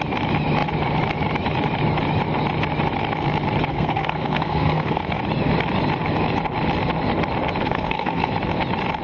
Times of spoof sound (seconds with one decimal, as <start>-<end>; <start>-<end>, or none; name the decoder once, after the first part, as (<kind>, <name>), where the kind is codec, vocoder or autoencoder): 3.7-5.2 (codec, SNAC); 7.6-8.3